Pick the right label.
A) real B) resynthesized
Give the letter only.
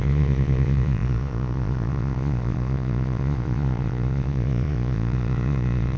B